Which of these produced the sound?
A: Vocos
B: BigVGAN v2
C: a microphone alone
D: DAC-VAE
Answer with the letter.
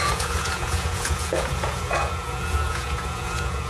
A